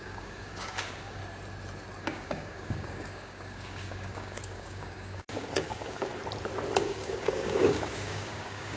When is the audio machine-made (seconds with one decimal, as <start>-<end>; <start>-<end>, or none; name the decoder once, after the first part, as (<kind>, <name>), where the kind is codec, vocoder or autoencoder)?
0.0-1.2 (codec, DAC); 2.0-6.1; 6.8-8.8